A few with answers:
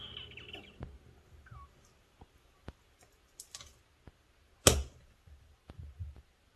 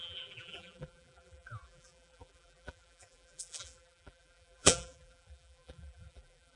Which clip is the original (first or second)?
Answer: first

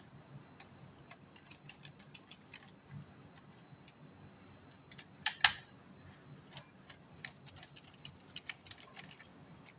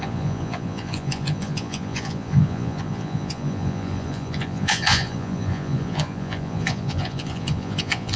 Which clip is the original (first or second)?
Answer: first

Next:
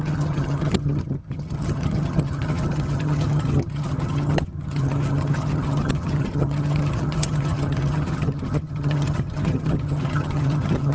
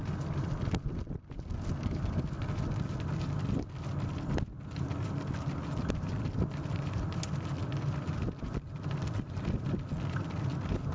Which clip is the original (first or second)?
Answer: second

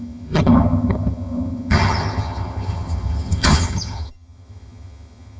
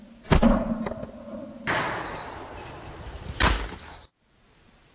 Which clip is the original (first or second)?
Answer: second